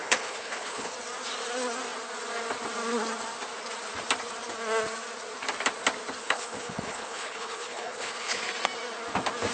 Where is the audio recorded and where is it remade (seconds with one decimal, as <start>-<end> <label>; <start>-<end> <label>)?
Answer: 0.0-0.9 remade; 0.9-6.2 recorded; 6.2-8.4 remade; 8.4-9.5 recorded

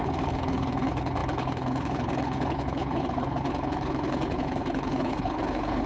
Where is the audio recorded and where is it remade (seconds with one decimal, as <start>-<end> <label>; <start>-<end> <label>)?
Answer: 0.0-5.9 remade

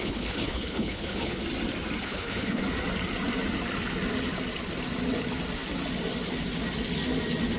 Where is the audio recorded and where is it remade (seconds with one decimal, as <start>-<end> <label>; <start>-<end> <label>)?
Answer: 0.0-1.4 remade; 1.4-2.0 recorded; 2.0-2.6 remade; 2.6-7.6 recorded

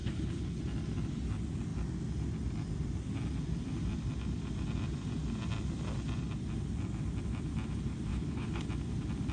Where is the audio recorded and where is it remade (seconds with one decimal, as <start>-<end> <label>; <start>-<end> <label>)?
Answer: 0.0-0.6 remade; 0.6-8.1 recorded; 8.1-8.7 remade; 8.7-9.3 recorded

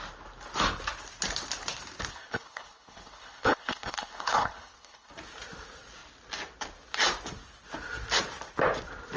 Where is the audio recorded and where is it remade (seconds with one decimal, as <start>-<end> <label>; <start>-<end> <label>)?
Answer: 0.0-2.1 recorded; 2.1-5.1 remade; 5.1-9.2 recorded

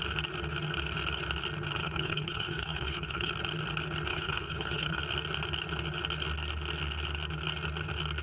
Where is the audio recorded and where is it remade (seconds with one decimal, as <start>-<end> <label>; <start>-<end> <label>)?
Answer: 0.0-1.8 recorded; 1.8-3.3 remade; 3.3-4.1 recorded; 4.1-5.0 remade; 5.0-8.2 recorded

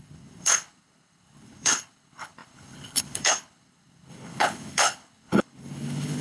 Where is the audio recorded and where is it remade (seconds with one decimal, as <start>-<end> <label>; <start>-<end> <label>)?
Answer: 0.0-6.2 remade

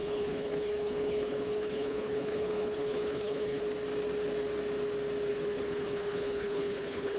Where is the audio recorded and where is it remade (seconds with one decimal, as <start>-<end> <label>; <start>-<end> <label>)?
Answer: 0.0-3.6 remade; 3.6-5.3 recorded; 5.3-7.2 remade